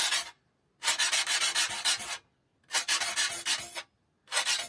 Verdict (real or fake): real